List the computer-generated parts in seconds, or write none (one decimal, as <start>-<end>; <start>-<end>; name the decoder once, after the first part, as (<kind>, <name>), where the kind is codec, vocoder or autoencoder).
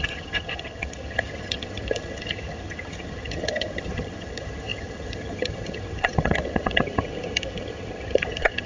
0.0-8.7 (vocoder, HiFi-GAN)